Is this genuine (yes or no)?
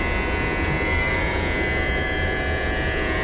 no